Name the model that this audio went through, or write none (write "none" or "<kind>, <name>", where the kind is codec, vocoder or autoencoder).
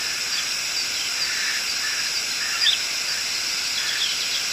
none